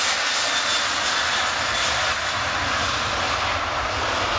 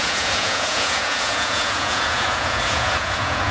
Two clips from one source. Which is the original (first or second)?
first